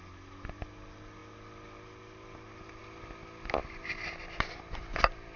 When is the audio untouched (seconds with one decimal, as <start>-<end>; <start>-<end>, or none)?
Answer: 0.0-5.4